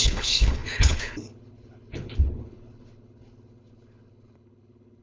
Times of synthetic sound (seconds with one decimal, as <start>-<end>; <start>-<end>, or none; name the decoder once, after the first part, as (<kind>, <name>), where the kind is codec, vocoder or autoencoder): 0.0-5.0 (codec, HILCodec)